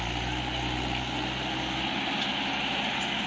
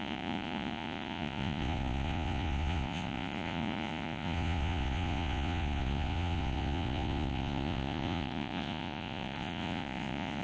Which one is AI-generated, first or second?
second